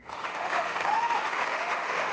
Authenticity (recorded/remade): remade